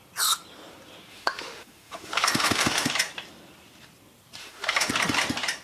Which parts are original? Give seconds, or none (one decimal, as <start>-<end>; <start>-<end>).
0.0-1.1; 2.9-4.4; 4.9-5.6